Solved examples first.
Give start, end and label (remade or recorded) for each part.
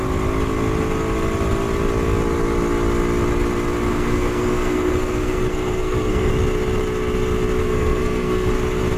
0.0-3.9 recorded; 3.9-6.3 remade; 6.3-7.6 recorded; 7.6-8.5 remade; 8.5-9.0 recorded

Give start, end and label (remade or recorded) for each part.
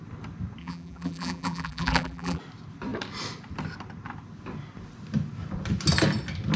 0.0-0.6 recorded; 0.6-2.4 remade; 2.4-6.6 recorded